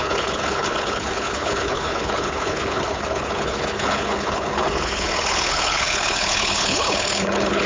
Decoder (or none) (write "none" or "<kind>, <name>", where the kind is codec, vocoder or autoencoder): codec, HILCodec